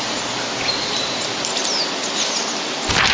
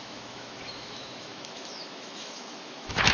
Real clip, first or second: first